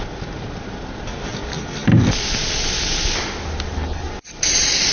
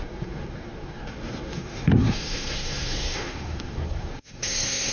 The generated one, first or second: second